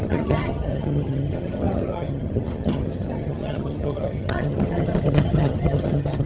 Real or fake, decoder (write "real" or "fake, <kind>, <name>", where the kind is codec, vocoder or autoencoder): fake, vocoder, HiFi-GAN